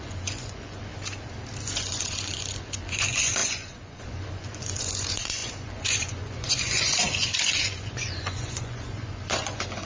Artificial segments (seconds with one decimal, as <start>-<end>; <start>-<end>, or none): 0.0-0.9; 1.6-9.9